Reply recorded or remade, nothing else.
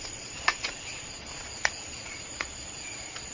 remade